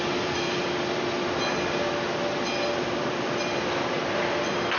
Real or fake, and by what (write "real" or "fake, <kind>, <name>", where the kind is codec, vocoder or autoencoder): fake, vocoder, BigVGAN v2